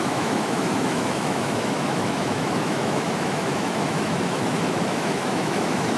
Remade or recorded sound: remade